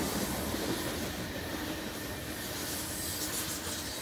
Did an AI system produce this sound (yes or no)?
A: no